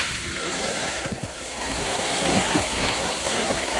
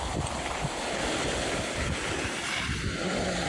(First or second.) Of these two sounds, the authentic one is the second